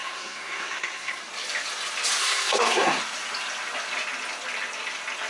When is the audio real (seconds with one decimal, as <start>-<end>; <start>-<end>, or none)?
1.2-2.2; 3.0-5.3

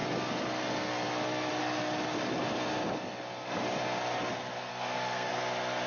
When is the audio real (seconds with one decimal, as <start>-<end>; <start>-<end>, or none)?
0.0-4.7; 5.3-5.9